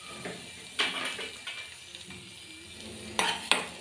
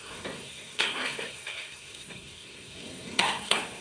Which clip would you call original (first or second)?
first